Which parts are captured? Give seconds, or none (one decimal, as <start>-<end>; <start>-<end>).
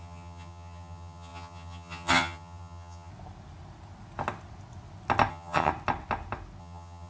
3.1-5.3; 5.7-6.6